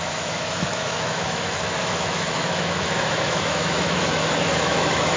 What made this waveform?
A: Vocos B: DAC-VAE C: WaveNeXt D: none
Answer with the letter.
B